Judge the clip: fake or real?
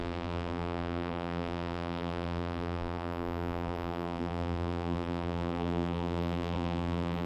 fake